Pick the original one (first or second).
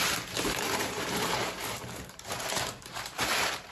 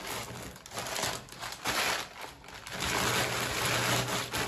second